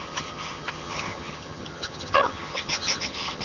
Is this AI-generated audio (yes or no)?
yes